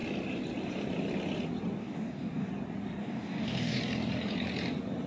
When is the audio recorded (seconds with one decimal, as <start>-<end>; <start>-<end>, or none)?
0.0-1.8; 2.5-3.0; 3.8-5.1